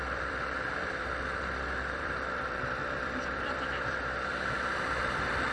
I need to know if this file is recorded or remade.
remade